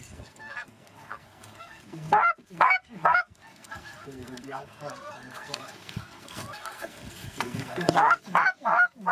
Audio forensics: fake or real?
fake